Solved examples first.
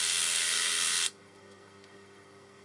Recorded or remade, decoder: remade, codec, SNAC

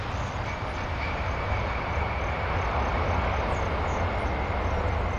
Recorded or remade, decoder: recorded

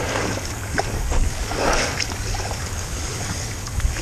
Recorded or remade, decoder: remade, codec, DAC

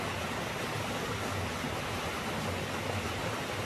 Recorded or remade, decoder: recorded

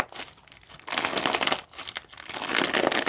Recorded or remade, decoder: recorded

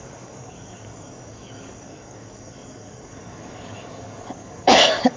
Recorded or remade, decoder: remade, codec, DAC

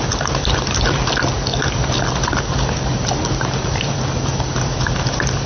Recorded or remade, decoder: remade, vocoder, BigVGAN v2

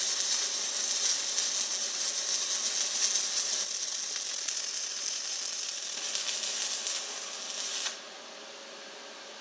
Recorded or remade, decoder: recorded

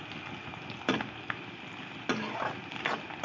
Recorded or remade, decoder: recorded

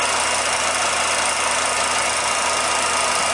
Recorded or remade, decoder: recorded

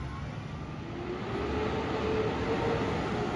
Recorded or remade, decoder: recorded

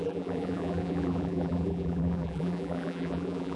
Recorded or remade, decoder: remade, vocoder, BigVGAN v2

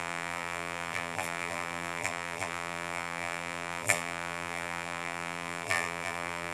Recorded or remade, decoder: remade, vocoder, BigVGAN v2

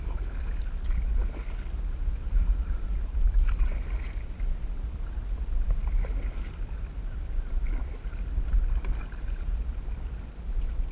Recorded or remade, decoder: recorded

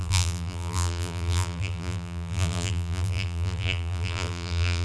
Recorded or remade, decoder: remade, vocoder, BigVGAN v2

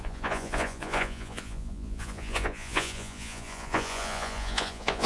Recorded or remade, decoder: remade, vocoder, Vocos